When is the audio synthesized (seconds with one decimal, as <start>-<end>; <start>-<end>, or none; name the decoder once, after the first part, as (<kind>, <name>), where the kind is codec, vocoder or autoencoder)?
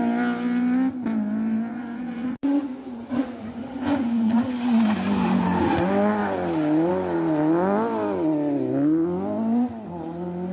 1.7-4.4 (vocoder, Vocos)